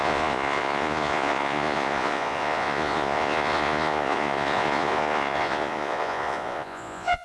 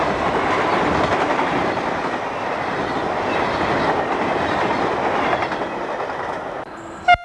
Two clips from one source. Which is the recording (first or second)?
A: second